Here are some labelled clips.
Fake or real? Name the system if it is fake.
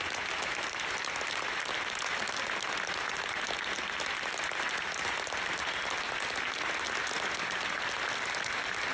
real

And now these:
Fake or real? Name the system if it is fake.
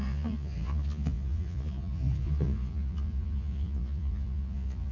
fake, vocoder, Vocos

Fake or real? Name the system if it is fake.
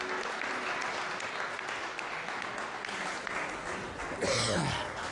real